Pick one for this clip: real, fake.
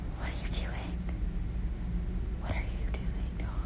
real